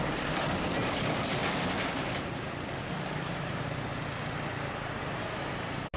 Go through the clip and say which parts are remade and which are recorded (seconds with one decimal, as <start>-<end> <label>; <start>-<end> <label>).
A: 0.0-6.0 recorded